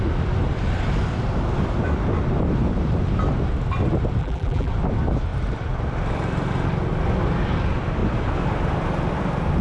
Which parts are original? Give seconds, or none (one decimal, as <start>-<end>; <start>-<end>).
0.0-4.2; 4.7-9.6